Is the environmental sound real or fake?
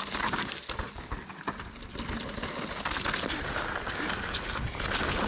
real